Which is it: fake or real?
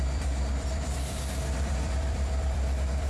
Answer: fake